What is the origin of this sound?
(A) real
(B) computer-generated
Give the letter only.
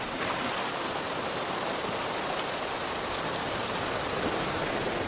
A